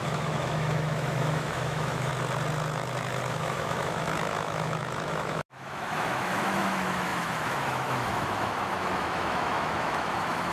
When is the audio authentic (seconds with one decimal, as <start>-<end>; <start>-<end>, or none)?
2.1-3.3